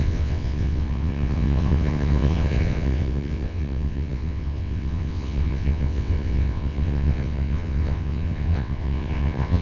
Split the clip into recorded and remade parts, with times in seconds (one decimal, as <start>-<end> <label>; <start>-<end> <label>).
0.0-9.6 remade